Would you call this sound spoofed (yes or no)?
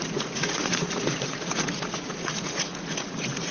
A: yes